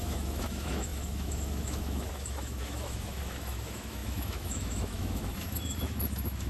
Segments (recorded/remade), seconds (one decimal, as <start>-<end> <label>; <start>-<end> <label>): 0.0-6.5 remade